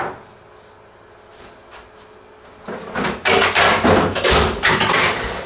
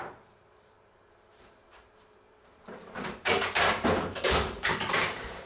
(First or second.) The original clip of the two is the first